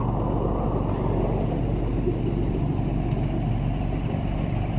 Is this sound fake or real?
real